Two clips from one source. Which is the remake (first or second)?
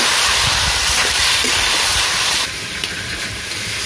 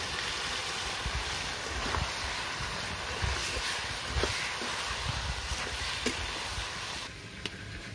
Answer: first